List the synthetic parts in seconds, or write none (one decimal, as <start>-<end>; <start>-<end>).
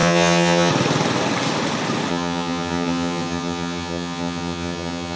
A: 0.0-0.7; 2.1-5.2